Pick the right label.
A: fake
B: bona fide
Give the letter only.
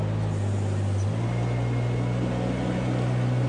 B